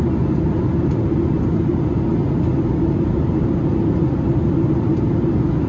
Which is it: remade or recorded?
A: recorded